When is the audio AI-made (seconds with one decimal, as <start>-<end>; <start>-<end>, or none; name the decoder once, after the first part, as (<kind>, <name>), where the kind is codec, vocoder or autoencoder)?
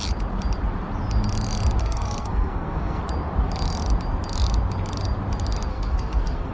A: 1.8-3.0 (codec, SNAC); 5.7-6.5